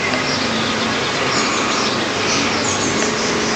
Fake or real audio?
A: real